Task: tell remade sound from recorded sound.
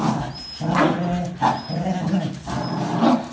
recorded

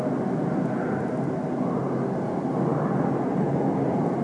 recorded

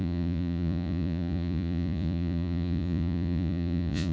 remade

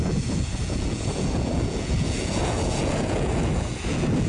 remade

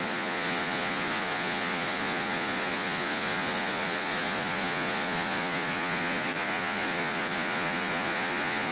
remade